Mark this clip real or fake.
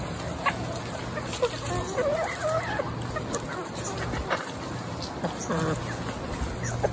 real